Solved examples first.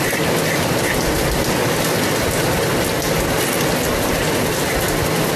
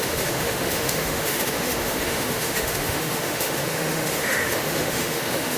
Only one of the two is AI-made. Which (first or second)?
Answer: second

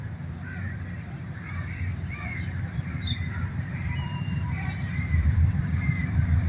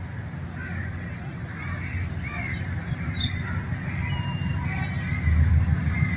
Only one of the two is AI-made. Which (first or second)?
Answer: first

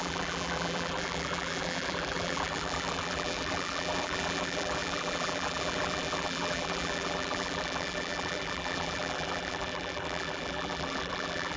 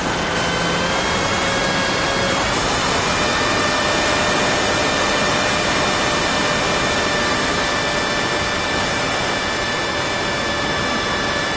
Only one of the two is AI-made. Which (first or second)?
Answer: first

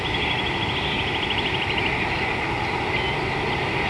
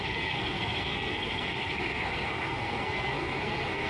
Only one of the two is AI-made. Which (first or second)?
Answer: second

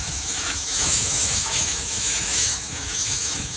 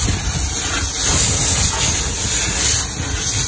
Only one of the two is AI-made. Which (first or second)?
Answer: first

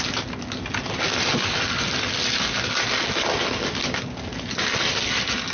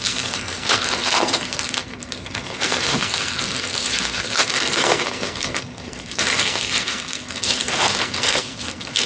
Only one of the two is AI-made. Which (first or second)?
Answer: second